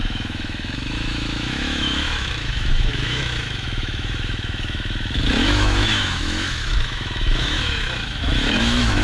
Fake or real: fake